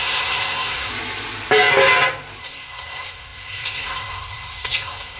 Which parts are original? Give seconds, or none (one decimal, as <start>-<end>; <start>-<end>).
0.9-2.4